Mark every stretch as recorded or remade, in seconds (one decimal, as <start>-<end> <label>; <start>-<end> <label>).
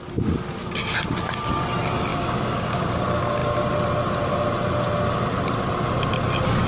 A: 0.0-2.1 recorded; 2.1-2.9 remade; 2.9-6.7 recorded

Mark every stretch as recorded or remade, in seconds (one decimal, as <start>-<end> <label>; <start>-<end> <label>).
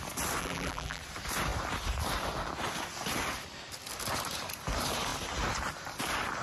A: 0.0-0.4 recorded; 0.4-1.0 remade; 1.0-6.4 recorded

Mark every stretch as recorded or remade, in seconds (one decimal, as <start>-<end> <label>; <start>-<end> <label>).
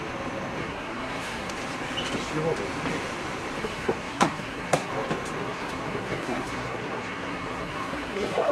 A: 0.0-0.6 recorded; 0.6-1.5 remade; 1.5-3.6 recorded; 3.6-4.9 remade; 4.9-5.4 recorded; 5.4-8.5 remade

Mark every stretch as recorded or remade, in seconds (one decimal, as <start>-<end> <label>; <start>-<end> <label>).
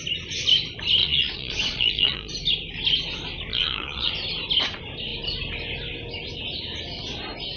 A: 0.0-1.0 recorded; 1.0-2.3 remade; 2.3-3.5 recorded; 3.5-4.1 remade; 4.1-7.6 recorded